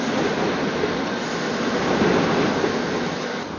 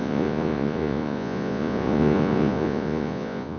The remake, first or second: second